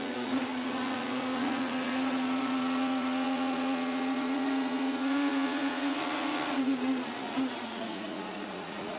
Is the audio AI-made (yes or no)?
yes